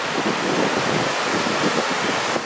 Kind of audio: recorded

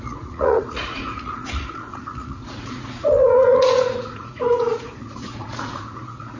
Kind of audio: remade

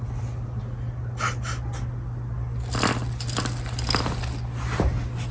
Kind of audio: recorded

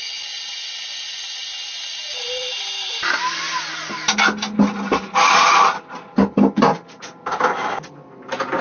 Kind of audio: recorded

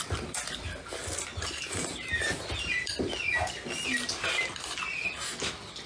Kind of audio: recorded